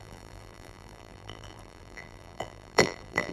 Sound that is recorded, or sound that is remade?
remade